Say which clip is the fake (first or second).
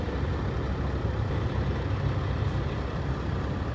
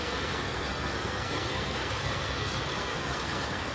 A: second